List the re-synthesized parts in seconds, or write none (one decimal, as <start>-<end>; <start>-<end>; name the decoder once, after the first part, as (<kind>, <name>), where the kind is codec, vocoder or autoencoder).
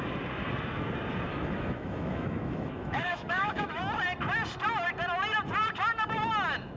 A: 1.3-3.8 (autoencoder, DAC-VAE)